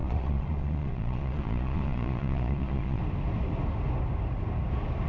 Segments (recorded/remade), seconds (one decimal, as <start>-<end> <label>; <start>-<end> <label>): 0.0-3.0 remade; 3.0-5.1 recorded